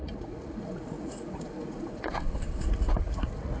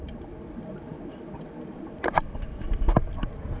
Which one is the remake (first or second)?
first